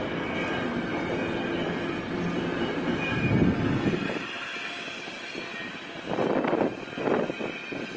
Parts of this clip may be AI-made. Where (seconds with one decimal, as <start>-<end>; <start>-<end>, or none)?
none